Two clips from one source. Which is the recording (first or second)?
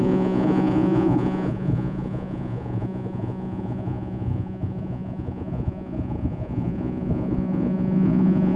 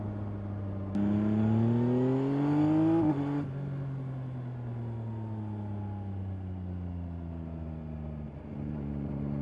second